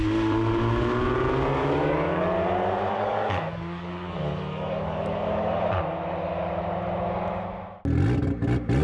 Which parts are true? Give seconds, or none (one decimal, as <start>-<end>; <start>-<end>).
0.0-1.6; 2.2-2.9; 5.6-8.8